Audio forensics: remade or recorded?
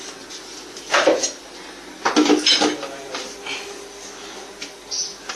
recorded